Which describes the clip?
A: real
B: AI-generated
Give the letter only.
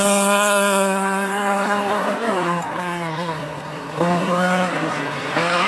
B